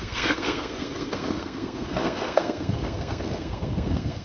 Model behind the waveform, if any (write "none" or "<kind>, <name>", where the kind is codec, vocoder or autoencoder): codec, SNAC